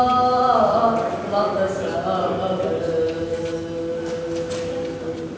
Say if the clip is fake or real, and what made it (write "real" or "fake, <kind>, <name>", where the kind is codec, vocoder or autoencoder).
real